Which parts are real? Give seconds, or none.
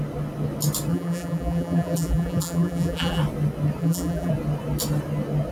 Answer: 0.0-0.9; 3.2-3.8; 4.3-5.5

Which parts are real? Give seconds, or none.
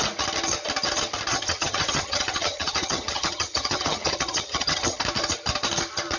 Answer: 0.0-1.3; 5.0-6.2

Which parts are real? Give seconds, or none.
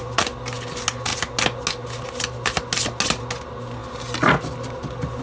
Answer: 0.0-5.2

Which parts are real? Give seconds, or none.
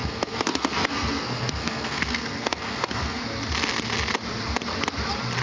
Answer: 3.2-5.4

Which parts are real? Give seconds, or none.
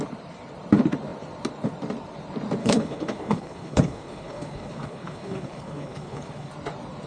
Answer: 0.0-2.6; 6.5-7.1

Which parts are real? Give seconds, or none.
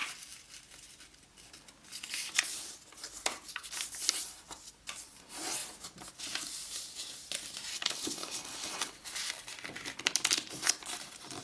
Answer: 0.0-7.7; 8.9-11.4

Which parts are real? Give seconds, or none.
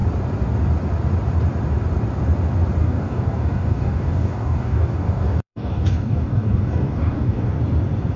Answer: 0.0-2.8; 7.6-8.2